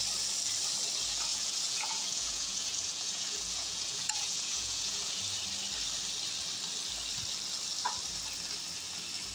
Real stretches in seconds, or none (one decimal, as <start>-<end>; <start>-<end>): 0.0-1.3; 5.2-9.3